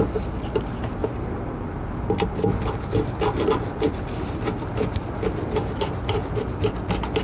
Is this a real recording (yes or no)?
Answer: yes